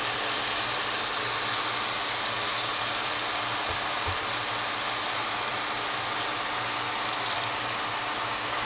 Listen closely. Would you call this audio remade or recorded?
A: recorded